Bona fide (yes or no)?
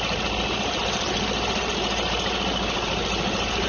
yes